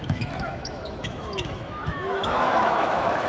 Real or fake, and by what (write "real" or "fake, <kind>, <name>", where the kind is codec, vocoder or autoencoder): fake, autoencoder, DAC-VAE